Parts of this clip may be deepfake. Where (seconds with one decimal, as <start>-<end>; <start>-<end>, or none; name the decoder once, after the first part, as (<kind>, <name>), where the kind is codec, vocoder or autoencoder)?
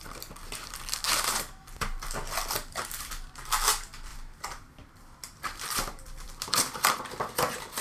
4.1-6.5 (vocoder, BigVGAN v2)